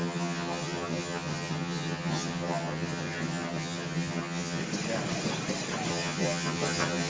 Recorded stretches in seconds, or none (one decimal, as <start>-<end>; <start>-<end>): 4.6-5.9